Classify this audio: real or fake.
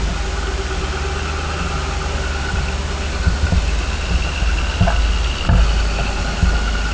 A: real